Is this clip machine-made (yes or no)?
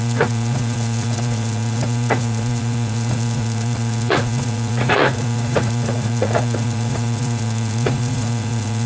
yes